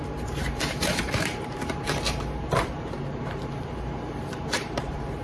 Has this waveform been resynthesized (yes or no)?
yes